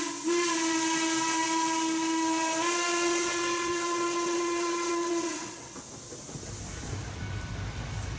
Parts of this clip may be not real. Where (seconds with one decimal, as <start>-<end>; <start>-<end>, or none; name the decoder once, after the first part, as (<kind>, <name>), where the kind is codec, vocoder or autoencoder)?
2.9-5.8 (vocoder, WaveNeXt)